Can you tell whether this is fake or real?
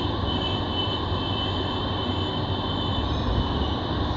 real